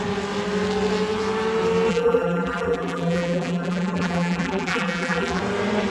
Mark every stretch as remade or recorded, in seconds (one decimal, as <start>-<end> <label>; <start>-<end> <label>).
0.0-1.9 recorded; 1.9-5.4 remade; 5.4-5.9 recorded